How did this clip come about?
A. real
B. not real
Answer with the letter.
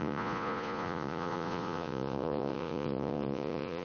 B